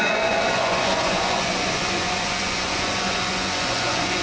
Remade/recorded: remade